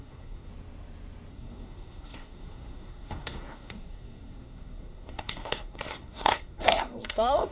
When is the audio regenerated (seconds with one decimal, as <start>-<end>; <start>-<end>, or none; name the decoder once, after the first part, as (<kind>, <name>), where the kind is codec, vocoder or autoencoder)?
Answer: 0.0-0.5 (codec, SNAC); 1.3-7.5